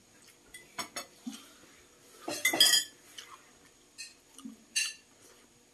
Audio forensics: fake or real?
real